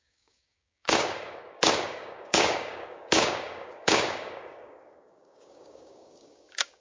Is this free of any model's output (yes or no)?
no